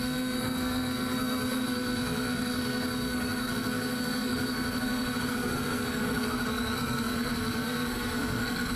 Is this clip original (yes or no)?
no